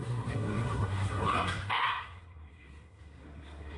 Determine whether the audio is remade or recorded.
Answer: remade